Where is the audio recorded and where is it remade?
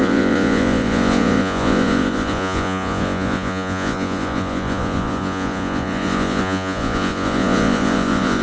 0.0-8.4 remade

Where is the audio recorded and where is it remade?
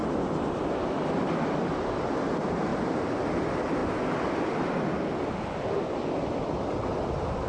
0.0-2.1 recorded; 2.1-3.8 remade; 3.8-5.9 recorded; 5.9-7.5 remade